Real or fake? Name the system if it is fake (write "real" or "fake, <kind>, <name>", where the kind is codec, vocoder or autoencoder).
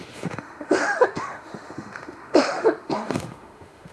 fake, autoencoder, DAC-VAE